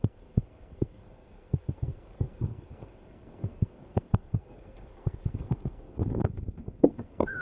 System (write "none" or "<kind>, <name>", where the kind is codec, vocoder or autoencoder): codec, SNAC